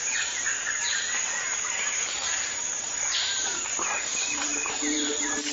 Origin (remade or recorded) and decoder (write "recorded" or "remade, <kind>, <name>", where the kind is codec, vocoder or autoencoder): remade, vocoder, BigVGAN v2